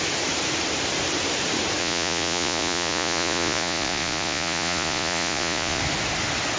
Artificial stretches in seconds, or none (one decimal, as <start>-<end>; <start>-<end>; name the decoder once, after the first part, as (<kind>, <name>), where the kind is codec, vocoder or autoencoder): 1.8-5.8 (vocoder, Vocos)